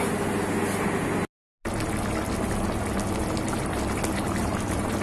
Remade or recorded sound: recorded